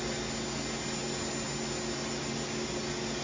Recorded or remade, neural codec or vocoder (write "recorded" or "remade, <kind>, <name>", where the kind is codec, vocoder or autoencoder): recorded